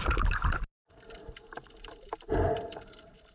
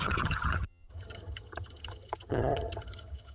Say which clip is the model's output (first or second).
second